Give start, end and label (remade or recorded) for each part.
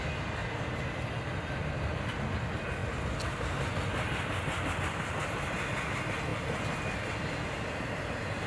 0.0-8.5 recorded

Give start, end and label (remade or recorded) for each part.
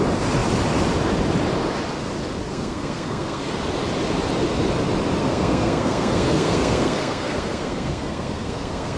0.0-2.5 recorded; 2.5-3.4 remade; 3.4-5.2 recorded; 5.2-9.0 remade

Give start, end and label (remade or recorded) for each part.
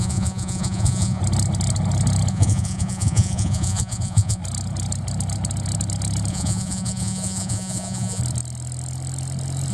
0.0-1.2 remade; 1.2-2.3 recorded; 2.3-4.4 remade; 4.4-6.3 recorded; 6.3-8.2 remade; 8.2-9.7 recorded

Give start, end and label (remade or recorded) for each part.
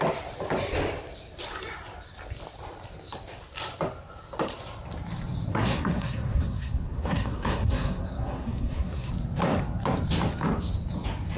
0.0-5.5 recorded; 5.5-9.1 remade; 9.1-11.4 recorded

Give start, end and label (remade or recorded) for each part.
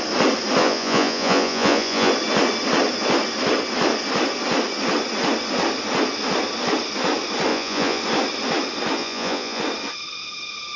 0.0-0.6 recorded; 0.6-2.1 remade; 2.1-7.5 recorded; 7.5-8.0 remade; 8.0-9.0 recorded; 9.0-9.6 remade; 9.6-10.8 recorded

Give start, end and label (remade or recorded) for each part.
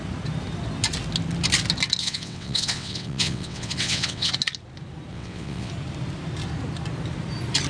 0.0-2.0 recorded; 2.0-4.3 remade; 4.3-5.1 recorded; 5.1-5.7 remade; 5.7-7.7 recorded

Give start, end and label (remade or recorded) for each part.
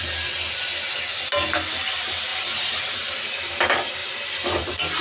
0.0-2.3 recorded; 2.3-3.6 remade; 3.6-4.0 recorded; 4.0-5.0 remade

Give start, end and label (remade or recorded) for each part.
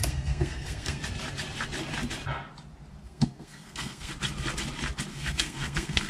0.0-1.0 remade; 1.0-3.0 recorded; 3.0-4.1 remade; 4.1-5.1 recorded; 5.1-6.1 remade